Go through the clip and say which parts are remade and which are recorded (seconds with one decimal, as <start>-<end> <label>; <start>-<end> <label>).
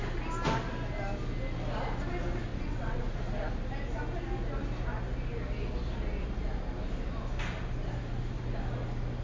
0.0-2.5 recorded; 2.5-3.0 remade; 3.0-9.2 recorded